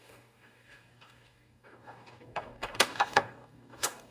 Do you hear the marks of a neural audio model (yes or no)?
yes